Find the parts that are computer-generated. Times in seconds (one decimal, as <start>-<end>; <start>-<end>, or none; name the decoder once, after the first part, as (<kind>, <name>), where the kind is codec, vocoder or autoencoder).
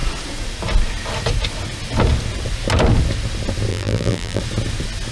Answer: 3.7-4.4 (vocoder, BigVGAN v2)